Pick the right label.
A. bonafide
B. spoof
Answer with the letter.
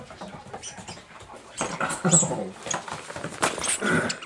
B